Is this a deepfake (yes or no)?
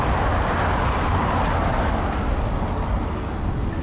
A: no